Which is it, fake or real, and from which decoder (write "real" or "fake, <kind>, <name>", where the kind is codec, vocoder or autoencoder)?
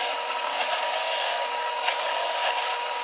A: fake, codec, DAC